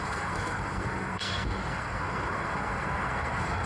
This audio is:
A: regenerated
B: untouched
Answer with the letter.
A